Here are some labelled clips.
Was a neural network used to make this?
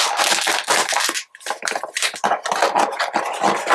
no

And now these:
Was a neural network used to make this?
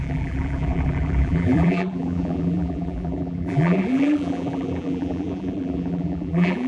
yes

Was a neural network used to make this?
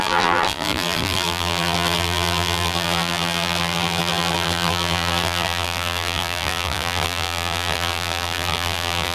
yes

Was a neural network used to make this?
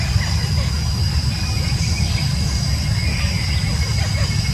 no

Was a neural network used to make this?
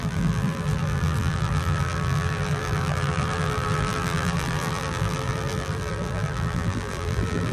yes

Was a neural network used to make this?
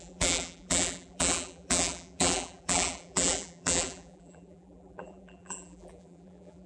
yes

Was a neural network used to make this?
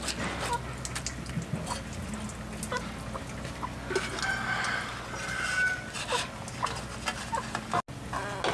no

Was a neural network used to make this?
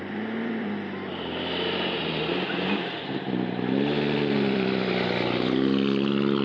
yes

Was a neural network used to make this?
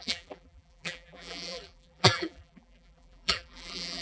yes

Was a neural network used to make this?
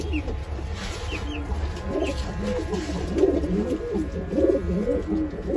no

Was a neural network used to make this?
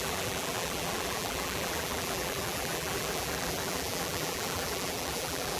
yes